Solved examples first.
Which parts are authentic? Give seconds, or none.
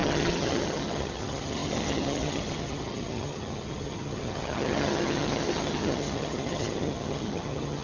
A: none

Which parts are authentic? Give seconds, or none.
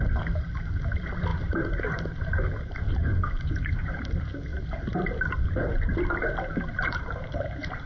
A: 0.0-1.3; 4.0-4.5; 5.5-6.5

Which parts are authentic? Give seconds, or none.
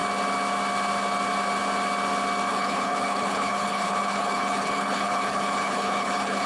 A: 0.0-2.5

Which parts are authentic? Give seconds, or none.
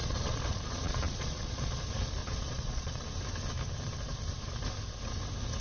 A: 1.8-2.2; 3.0-5.6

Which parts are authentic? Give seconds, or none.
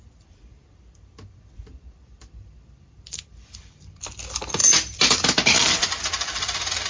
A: none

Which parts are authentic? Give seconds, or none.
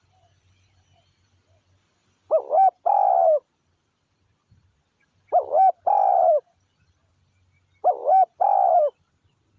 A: 0.0-9.6